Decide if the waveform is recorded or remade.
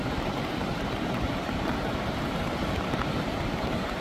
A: remade